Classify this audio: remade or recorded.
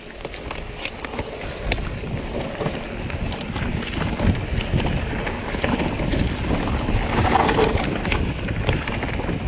recorded